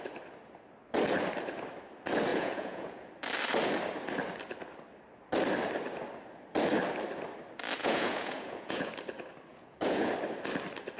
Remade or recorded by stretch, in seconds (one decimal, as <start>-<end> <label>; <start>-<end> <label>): 0.0-2.3 recorded; 2.3-3.1 remade; 3.1-7.8 recorded; 7.8-8.9 remade; 8.9-9.5 recorded; 9.5-10.1 remade; 10.1-11.0 recorded